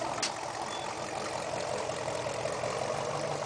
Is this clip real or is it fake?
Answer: real